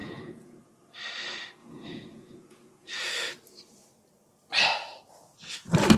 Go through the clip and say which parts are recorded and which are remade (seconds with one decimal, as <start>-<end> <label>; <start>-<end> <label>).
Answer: 0.0-0.6 remade; 0.6-1.6 recorded; 1.6-3.0 remade; 3.0-6.0 recorded

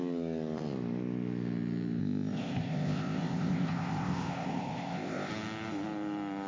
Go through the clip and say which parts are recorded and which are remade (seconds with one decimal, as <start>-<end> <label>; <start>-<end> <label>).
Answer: 0.0-2.0 recorded; 2.0-5.3 remade; 5.3-6.5 recorded

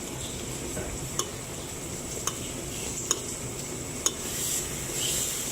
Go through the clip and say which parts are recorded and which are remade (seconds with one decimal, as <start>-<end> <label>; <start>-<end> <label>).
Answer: 0.0-5.5 recorded

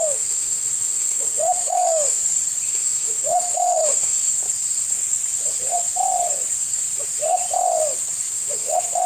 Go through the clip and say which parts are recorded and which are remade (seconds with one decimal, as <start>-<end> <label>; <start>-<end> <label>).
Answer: 0.0-2.2 remade; 2.2-2.7 recorded; 2.7-4.2 remade; 4.2-8.3 recorded; 8.3-9.1 remade

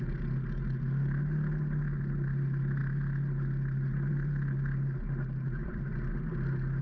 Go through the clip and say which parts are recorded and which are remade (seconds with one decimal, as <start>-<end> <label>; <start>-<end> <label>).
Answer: 0.0-5.6 recorded; 5.6-6.1 remade; 6.1-6.8 recorded

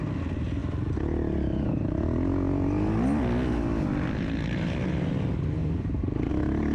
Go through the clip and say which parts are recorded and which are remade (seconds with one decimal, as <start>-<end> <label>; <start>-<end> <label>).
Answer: 0.0-6.7 recorded